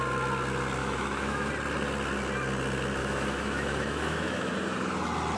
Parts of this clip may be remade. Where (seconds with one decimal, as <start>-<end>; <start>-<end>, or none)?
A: 0.8-1.5; 3.0-4.5